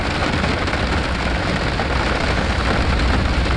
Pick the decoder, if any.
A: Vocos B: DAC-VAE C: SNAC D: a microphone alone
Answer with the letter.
D